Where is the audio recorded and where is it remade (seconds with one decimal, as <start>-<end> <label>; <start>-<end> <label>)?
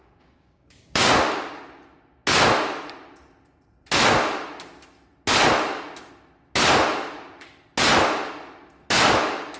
0.0-1.1 remade; 1.1-9.6 recorded